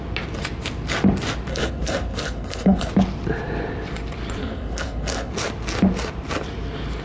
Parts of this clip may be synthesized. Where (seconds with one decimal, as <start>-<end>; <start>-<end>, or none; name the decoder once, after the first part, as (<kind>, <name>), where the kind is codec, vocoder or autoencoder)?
1.5-2.9 (codec, SNAC); 4.4-5.3